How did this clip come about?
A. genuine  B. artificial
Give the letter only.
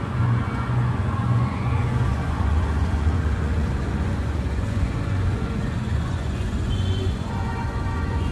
B